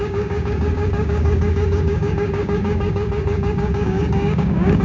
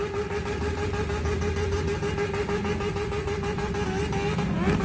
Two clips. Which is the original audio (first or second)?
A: second